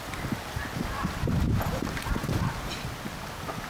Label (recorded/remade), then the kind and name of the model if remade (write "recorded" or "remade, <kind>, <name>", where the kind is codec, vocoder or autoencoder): recorded